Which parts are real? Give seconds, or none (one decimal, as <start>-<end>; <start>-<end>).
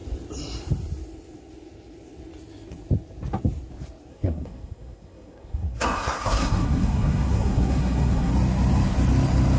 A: 0.0-4.1; 8.3-9.6